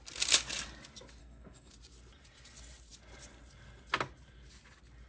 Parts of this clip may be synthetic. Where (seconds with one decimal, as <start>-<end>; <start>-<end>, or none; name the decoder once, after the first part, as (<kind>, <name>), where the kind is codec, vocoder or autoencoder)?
1.2-1.7 (codec, SNAC)